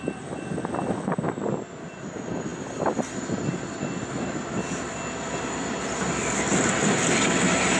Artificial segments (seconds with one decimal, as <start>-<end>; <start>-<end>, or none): none